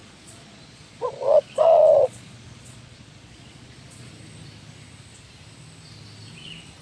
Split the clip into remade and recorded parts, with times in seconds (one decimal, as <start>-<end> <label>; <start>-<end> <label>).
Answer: 0.0-4.1 remade; 4.1-6.8 recorded